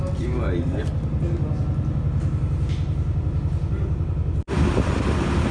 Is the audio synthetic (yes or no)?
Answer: no